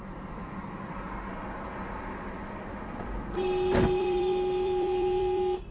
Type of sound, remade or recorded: remade